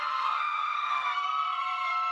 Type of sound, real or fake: fake